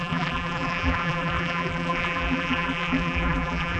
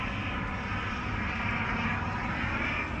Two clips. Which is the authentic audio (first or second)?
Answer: second